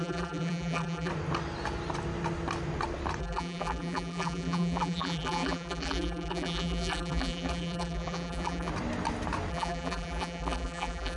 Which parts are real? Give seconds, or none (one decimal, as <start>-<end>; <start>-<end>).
1.1-3.2; 8.7-9.5